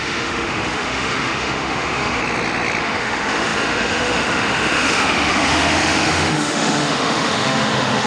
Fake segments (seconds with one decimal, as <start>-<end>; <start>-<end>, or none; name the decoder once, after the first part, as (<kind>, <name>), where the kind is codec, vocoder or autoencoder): 0.0-2.2 (autoencoder, DAC-VAE); 2.8-8.1